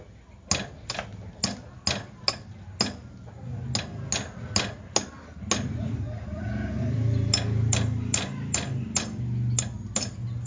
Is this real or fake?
real